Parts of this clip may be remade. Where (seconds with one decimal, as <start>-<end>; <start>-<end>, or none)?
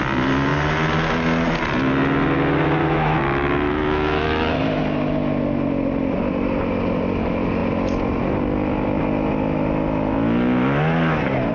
2.8-4.8